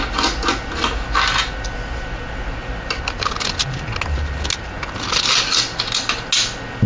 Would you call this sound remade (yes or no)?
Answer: no